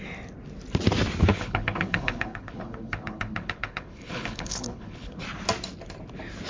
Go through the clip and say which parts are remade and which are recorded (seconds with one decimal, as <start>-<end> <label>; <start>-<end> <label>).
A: 0.0-1.3 recorded; 1.3-5.2 remade; 5.2-6.5 recorded